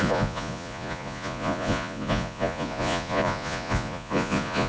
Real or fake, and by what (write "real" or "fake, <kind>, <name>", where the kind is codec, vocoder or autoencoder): fake, vocoder, Vocos